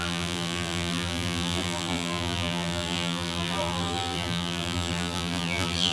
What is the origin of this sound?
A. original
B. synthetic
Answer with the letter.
B